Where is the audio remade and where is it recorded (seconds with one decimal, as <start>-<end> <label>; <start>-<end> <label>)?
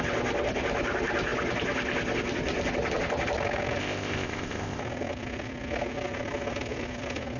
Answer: 0.0-3.8 recorded; 3.8-4.8 remade; 4.8-7.4 recorded